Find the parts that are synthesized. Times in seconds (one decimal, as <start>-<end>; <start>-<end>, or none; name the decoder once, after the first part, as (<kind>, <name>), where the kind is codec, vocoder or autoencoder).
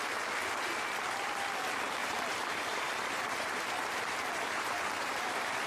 2.0-5.7 (vocoder, BigVGAN v2)